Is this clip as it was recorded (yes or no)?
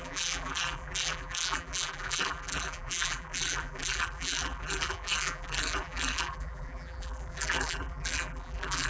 no